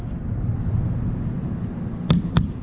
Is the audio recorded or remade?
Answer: recorded